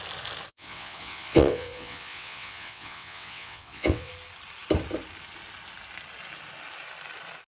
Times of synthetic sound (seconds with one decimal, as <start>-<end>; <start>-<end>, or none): 0.5-4.1